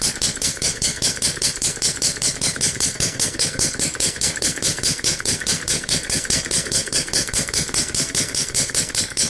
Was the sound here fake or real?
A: fake